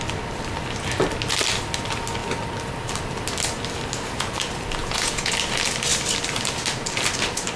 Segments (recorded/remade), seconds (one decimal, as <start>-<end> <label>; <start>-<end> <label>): 0.0-4.8 recorded; 4.8-5.3 remade; 5.3-7.6 recorded